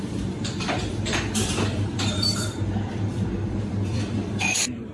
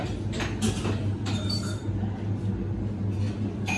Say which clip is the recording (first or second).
second